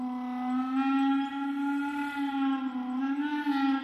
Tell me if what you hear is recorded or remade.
recorded